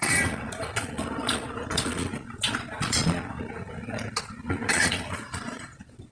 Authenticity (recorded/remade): remade